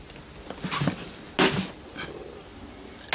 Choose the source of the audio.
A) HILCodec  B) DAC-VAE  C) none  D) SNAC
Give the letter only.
C